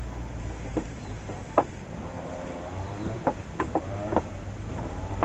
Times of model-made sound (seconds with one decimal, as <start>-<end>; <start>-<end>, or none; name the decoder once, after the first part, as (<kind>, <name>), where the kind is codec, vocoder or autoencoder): 0.0-5.2 (vocoder, BigVGAN v2)

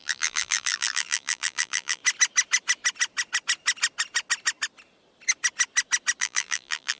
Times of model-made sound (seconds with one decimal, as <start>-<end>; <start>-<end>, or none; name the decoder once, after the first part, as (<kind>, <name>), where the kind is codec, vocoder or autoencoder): 0.0-2.0 (vocoder, BigVGAN v2); 6.2-7.0

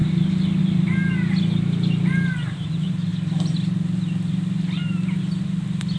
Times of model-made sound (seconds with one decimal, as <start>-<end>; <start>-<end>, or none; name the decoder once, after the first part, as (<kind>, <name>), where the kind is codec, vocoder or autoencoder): 3.1-5.2 (vocoder, BigVGAN v2)

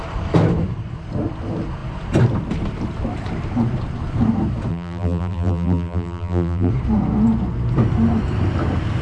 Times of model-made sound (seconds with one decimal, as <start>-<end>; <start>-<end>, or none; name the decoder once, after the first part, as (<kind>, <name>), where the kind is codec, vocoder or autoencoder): 4.7-6.7 (vocoder, BigVGAN v2)

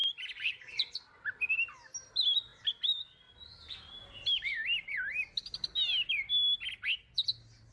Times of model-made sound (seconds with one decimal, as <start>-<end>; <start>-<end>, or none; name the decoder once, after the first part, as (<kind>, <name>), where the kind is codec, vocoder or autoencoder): 0.0-1.2 (vocoder, BigVGAN v2)

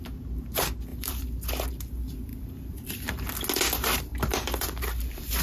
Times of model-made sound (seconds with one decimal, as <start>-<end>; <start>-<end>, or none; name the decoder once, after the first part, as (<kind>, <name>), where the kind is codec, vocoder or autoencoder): 0.9-1.5 (vocoder, BigVGAN v2); 2.3-3.1; 4.1-4.8

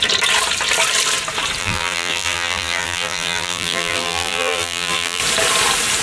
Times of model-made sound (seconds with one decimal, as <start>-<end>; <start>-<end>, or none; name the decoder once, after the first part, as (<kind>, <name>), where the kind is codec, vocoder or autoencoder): 1.6-5.2 (vocoder, BigVGAN v2)